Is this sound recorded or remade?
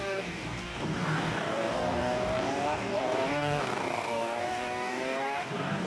remade